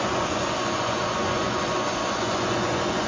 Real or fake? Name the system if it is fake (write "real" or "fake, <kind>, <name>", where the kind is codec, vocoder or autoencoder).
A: fake, vocoder, Vocos